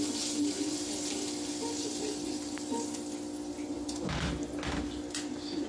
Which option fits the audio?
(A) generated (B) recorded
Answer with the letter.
B